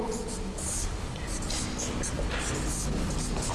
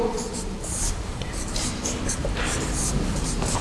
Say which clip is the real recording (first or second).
first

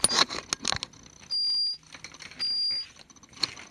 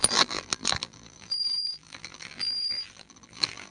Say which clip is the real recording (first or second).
first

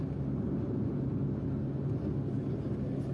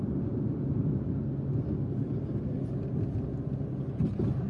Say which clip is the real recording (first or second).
first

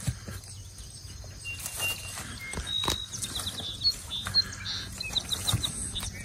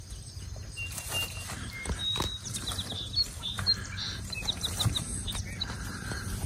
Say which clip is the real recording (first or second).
first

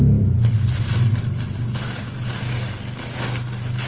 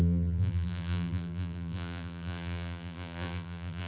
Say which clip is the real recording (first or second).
first